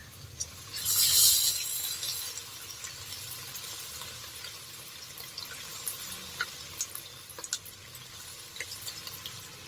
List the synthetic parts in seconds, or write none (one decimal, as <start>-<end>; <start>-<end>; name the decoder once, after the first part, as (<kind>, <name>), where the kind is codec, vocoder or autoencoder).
0.0-1.3 (vocoder, BigVGAN v2)